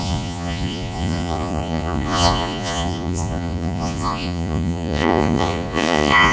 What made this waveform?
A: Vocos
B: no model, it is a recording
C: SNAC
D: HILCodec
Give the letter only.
A